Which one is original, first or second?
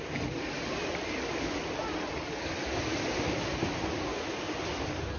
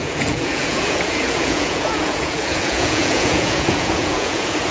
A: first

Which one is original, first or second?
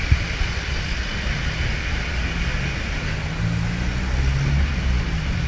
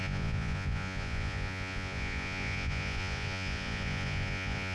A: first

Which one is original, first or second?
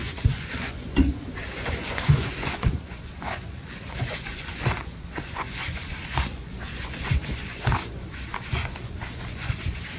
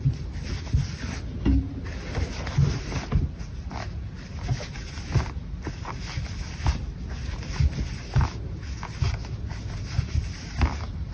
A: second